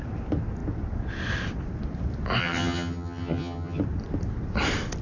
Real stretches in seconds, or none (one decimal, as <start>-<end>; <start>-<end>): 0.0-2.4; 3.8-5.0